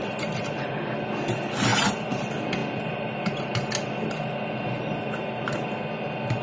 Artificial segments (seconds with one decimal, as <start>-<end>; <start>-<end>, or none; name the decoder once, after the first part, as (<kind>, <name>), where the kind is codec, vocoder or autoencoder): none

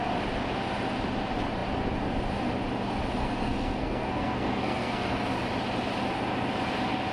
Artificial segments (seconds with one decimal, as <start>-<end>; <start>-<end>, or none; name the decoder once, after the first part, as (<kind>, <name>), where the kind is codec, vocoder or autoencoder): 3.2-5.2 (codec, SNAC)

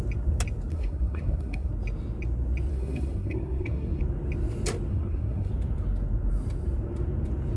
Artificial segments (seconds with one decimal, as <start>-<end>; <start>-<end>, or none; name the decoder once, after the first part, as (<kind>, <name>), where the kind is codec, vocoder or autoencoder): 0.7-1.7 (codec, SNAC); 2.7-4.0; 4.9-5.5

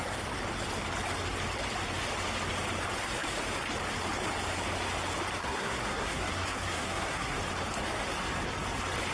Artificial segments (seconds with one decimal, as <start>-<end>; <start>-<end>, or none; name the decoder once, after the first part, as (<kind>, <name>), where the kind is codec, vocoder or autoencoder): 5.4-7.4 (codec, SNAC)

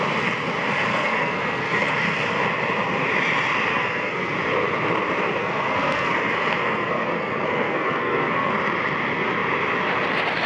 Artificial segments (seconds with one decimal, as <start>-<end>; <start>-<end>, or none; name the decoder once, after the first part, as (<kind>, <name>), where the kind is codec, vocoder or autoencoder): 0.9-1.9 (codec, SNAC); 3.7-4.3; 5.4-8.5